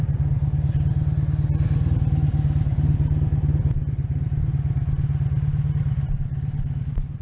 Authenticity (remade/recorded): recorded